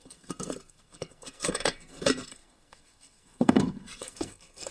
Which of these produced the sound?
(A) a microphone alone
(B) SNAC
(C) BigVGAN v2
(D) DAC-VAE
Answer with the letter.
B